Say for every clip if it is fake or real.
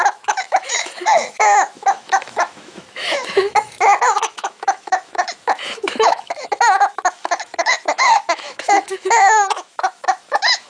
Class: fake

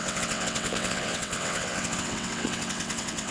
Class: fake